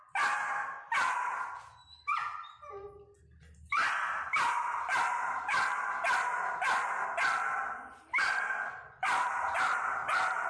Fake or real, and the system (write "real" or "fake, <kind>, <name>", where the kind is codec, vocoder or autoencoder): real